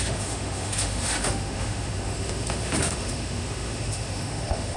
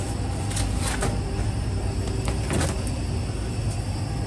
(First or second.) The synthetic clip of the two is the first